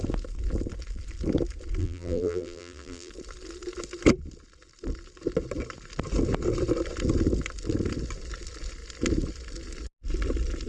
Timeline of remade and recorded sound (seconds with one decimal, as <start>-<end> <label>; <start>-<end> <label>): 0.0-1.8 recorded; 1.8-3.1 remade; 3.1-10.7 recorded